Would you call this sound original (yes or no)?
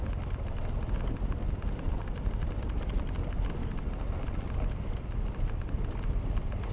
yes